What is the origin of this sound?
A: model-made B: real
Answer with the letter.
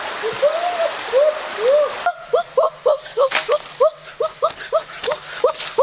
B